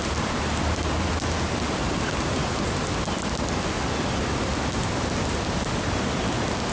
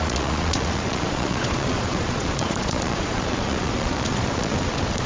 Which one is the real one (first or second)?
first